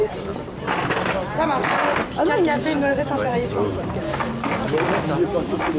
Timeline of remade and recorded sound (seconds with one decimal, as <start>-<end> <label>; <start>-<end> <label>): 0.0-0.7 remade; 0.7-2.9 recorded; 2.9-4.3 remade; 4.3-5.8 recorded

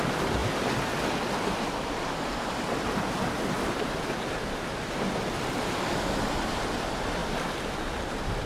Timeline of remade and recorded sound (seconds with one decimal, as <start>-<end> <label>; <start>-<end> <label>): 0.0-8.5 recorded

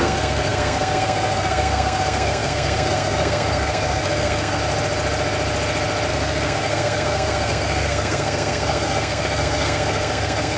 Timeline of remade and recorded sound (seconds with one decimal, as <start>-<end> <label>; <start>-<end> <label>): 0.0-4.6 remade; 4.6-6.1 recorded; 6.1-10.6 remade

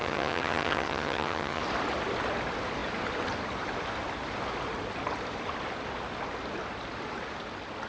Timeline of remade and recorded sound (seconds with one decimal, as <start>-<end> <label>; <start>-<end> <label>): 0.0-1.6 remade; 1.6-7.9 recorded

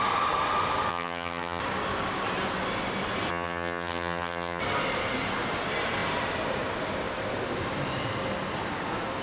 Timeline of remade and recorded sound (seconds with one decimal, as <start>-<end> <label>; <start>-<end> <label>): 0.0-0.9 recorded; 0.9-1.6 remade; 1.6-3.3 recorded; 3.3-4.6 remade; 4.6-9.2 recorded

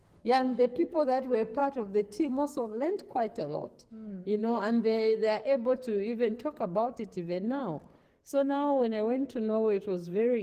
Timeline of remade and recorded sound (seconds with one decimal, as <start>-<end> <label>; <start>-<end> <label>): 0.0-7.6 remade; 7.6-8.3 recorded; 8.3-10.4 remade

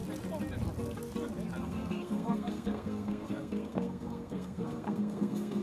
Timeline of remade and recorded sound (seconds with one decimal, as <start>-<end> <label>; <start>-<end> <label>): 0.0-1.6 recorded; 1.6-5.6 remade